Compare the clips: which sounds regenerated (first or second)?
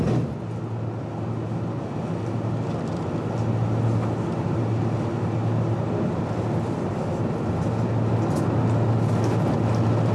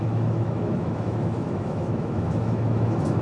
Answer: second